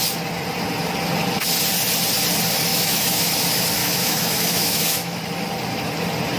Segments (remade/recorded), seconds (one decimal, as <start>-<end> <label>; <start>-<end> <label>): 0.0-2.7 recorded; 2.7-3.3 remade; 3.3-3.8 recorded; 3.8-5.2 remade; 5.2-6.4 recorded